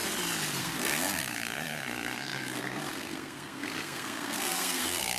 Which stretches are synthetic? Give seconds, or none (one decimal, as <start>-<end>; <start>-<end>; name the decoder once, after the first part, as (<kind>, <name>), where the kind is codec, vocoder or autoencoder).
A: 0.6-5.2 (codec, SNAC)